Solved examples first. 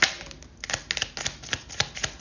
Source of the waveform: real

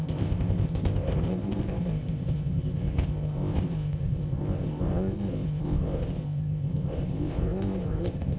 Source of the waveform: fake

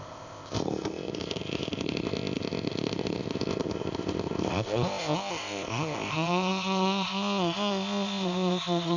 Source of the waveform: fake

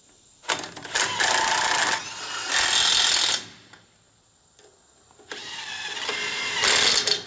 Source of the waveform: real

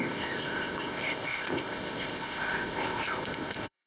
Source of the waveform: fake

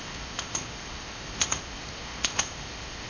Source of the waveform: fake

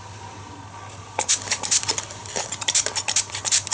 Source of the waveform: real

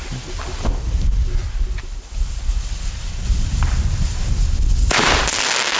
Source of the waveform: real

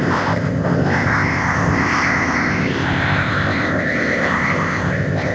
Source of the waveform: fake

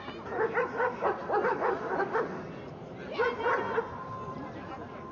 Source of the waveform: real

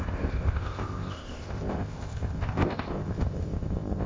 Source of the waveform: fake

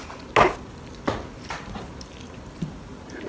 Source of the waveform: real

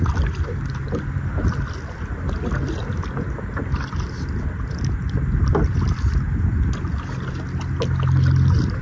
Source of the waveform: real